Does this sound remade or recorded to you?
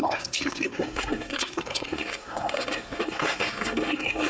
remade